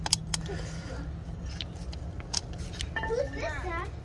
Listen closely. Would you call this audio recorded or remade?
recorded